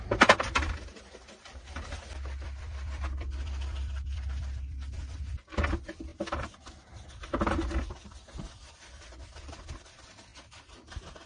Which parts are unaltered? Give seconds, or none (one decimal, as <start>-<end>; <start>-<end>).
6.1-8.4; 10.3-11.3